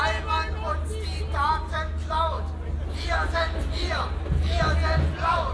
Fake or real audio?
real